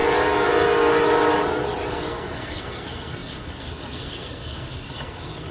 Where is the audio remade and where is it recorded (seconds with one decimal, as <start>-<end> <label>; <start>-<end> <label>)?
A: 0.0-1.9 recorded; 1.9-5.5 remade

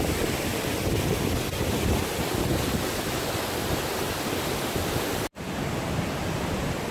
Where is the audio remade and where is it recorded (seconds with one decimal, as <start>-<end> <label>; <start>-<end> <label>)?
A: 0.0-6.9 recorded

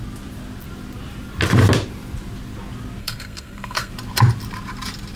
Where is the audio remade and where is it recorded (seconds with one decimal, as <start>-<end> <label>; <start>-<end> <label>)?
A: 0.0-3.0 recorded; 3.0-3.9 remade; 3.9-5.2 recorded

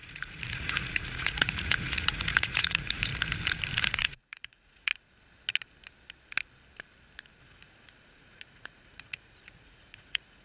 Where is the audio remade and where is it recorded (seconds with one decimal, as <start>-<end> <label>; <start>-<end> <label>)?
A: 0.0-3.1 remade; 3.1-3.8 recorded; 3.8-4.9 remade; 4.9-7.4 recorded; 7.4-10.4 remade

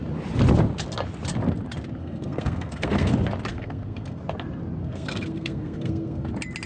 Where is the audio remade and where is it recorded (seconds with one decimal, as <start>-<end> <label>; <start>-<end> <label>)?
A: 0.0-2.0 recorded; 2.0-3.1 remade; 3.1-3.5 recorded; 3.5-4.2 remade; 4.2-4.8 recorded; 4.8-6.3 remade; 6.3-6.7 recorded

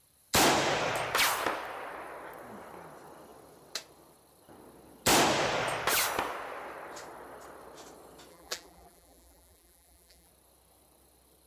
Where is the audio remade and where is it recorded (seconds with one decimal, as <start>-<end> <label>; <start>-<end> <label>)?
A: 0.0-8.3 recorded; 8.3-10.3 remade; 10.3-11.5 recorded